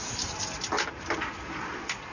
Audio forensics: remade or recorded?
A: recorded